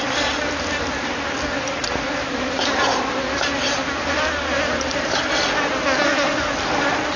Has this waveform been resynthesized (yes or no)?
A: no